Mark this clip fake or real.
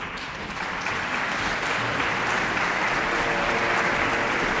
real